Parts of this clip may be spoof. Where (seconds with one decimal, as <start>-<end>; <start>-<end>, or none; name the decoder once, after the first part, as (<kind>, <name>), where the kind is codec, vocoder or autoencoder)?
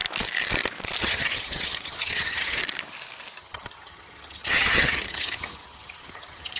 1.0-2.6 (vocoder, HiFi-GAN); 3.4-6.6